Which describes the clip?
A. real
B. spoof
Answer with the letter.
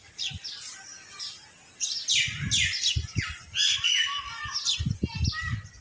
A